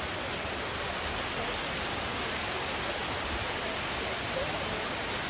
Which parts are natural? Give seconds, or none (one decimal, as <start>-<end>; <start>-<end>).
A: 0.0-3.0; 4.0-5.3